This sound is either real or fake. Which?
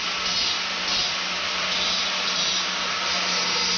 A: real